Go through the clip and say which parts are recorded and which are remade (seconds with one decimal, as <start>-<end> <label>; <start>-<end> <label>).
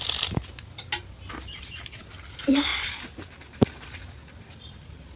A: 0.0-5.2 remade